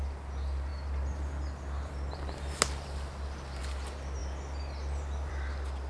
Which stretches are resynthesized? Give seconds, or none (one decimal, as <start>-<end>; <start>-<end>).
none